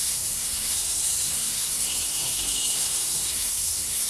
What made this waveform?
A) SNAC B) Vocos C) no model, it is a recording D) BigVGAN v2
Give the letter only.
A